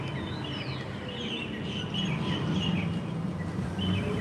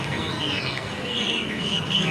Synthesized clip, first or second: second